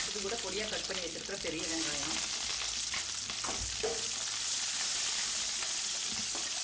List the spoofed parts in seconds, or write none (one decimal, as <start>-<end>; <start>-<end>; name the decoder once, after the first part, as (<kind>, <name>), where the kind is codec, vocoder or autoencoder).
none